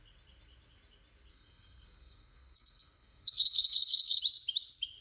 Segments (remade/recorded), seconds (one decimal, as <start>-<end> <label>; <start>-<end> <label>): 0.0-1.3 recorded; 1.3-4.2 remade; 4.2-5.0 recorded